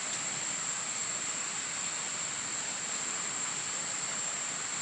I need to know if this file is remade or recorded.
recorded